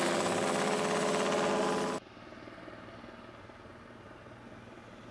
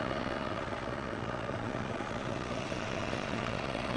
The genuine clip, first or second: first